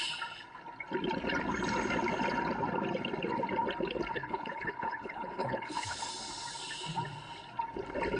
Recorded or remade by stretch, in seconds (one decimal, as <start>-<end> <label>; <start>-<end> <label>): 0.0-4.1 recorded; 4.1-6.1 remade; 6.1-8.2 recorded